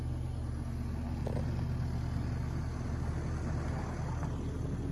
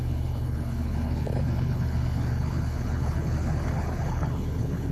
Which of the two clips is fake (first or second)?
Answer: second